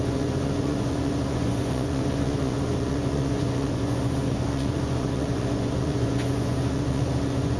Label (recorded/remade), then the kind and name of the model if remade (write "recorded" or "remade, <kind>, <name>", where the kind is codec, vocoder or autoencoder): remade, vocoder, Vocos